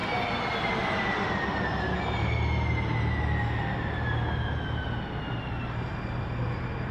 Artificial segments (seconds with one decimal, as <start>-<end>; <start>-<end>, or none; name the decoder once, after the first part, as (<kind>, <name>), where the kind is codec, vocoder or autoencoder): none